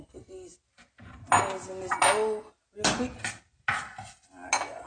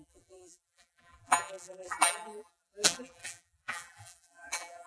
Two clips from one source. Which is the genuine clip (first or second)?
first